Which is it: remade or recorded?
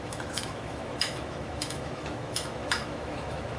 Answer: remade